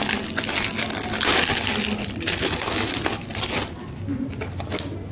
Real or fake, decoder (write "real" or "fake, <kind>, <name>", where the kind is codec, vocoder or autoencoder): real